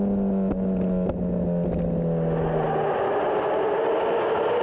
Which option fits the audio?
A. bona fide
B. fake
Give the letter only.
A